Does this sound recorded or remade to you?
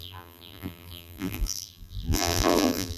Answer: remade